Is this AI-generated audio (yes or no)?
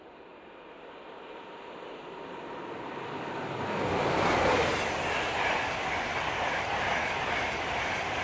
no